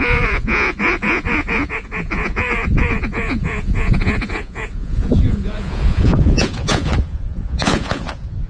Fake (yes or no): yes